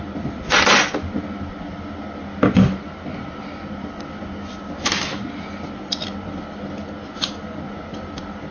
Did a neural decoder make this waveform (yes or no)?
no